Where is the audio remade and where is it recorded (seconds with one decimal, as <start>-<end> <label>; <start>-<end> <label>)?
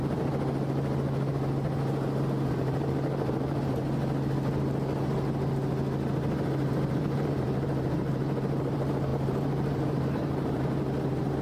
0.0-2.5 recorded; 2.5-3.8 remade; 3.8-6.9 recorded; 6.9-11.4 remade